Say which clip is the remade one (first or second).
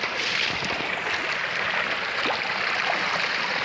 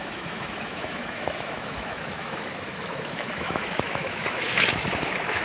second